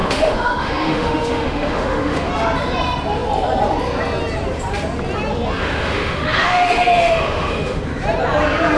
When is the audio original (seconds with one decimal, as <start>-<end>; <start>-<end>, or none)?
2.3-5.6; 7.8-8.8